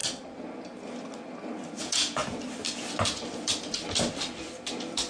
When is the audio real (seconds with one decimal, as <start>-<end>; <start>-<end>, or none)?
0.0-1.8; 2.2-5.1